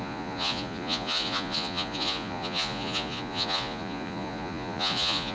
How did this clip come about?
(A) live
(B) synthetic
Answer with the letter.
B